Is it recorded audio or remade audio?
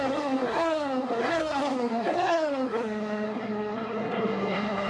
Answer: remade